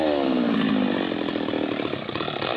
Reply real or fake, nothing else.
real